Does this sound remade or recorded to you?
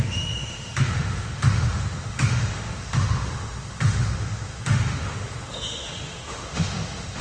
remade